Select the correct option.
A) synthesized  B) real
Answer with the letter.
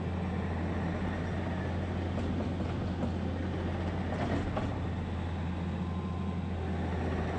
B